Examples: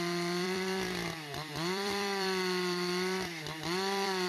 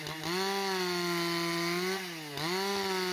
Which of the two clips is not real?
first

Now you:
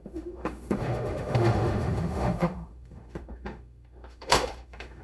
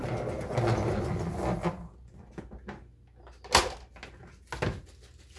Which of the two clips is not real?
first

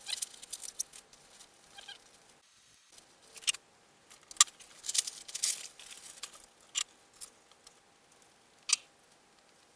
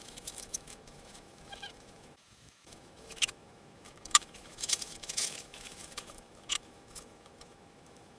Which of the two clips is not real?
second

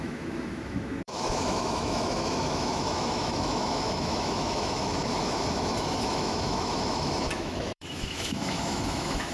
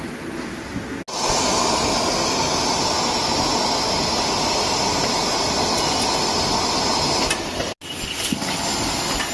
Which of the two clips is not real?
first